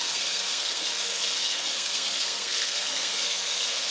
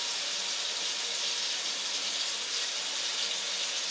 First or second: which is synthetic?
first